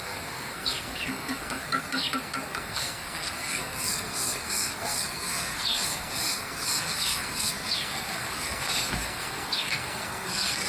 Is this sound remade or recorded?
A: remade